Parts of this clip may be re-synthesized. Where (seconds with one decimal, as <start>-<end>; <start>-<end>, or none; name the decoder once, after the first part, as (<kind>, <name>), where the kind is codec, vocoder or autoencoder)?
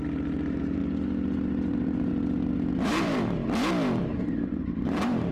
0.0-0.8 (vocoder, BigVGAN v2); 1.7-2.1; 2.8-3.4; 4.0-5.3